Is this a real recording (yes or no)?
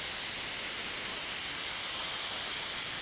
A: yes